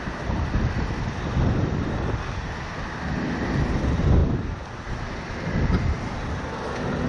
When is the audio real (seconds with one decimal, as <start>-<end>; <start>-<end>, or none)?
0.0-7.1